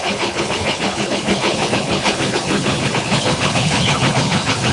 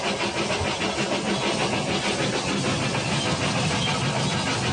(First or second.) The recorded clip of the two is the second